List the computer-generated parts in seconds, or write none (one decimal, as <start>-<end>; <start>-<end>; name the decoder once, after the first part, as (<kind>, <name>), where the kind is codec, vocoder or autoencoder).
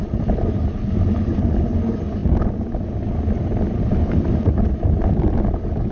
none